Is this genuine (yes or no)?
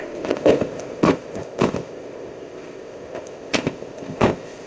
no